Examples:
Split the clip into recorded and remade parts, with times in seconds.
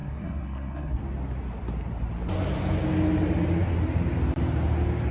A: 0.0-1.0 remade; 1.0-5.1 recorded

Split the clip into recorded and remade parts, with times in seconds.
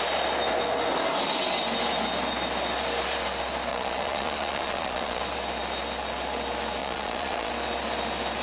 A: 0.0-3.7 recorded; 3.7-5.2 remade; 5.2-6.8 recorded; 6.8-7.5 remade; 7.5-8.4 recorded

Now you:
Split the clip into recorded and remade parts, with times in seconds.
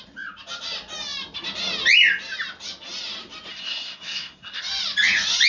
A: 0.0-3.5 recorded; 3.5-4.6 remade; 4.6-5.5 recorded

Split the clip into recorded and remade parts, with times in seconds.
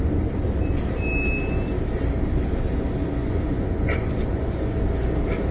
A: 0.0-3.2 recorded; 3.2-4.7 remade; 4.7-5.5 recorded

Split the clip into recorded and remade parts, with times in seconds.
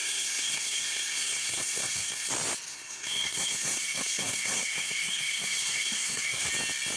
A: 0.0-2.3 remade; 2.3-2.7 recorded; 2.7-6.5 remade; 6.5-7.0 recorded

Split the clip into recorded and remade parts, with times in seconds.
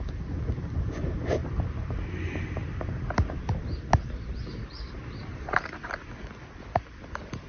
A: 0.0-1.4 recorded; 1.4-5.9 remade; 5.9-7.5 recorded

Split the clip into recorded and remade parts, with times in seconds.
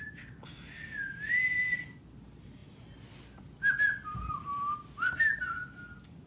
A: 0.0-6.3 recorded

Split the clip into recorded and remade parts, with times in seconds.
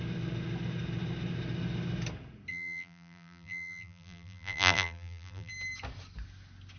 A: 0.0-2.5 recorded; 2.5-5.5 remade; 5.5-6.8 recorded